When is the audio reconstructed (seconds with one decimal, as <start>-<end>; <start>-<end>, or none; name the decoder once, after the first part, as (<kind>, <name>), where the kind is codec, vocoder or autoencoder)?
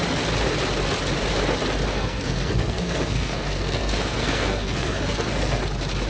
1.9-5.6 (codec, SNAC)